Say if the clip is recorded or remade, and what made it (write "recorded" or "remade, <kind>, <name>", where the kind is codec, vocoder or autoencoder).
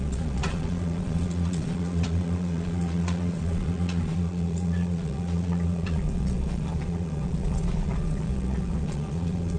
remade, vocoder, Vocos